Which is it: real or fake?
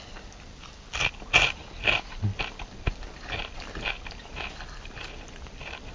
real